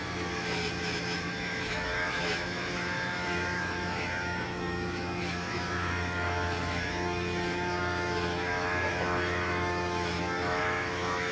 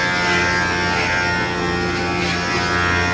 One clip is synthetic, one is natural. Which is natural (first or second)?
second